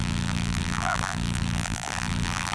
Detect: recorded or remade remade